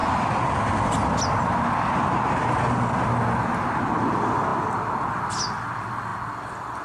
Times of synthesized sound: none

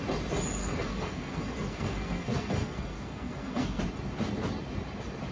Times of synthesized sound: 0.6-3.8 (codec, SNAC)

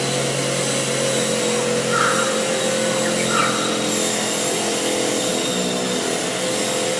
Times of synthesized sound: none